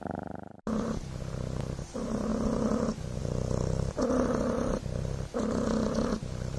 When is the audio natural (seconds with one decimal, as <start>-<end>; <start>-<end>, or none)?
0.0-6.6